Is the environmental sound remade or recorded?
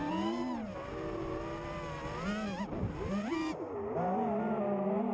recorded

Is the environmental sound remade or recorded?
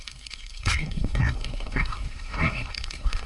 remade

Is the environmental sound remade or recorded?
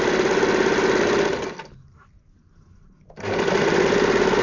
recorded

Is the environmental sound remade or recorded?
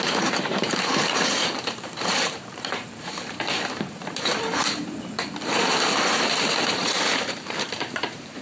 remade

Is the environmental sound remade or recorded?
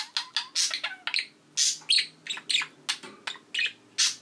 recorded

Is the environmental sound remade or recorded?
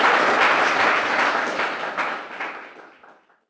recorded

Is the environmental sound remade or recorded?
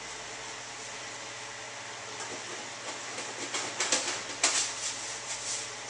recorded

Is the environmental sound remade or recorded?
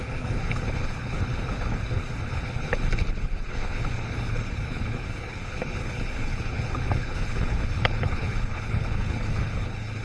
remade